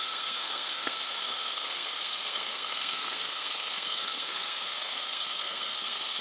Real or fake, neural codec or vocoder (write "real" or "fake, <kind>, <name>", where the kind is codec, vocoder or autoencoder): fake, codec, SNAC